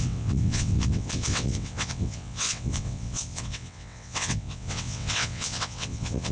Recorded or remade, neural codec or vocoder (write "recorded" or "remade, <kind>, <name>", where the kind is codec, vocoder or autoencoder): remade, vocoder, WaveNeXt